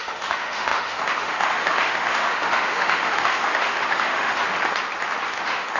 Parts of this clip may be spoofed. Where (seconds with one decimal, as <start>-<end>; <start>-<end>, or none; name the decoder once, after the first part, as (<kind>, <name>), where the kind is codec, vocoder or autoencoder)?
0.0-4.5 (autoencoder, DAC-VAE); 5.3-5.8